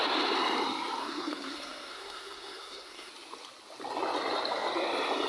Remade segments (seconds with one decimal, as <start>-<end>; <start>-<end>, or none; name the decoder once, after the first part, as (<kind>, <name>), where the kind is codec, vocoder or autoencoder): 1.0-3.1 (codec, SNAC)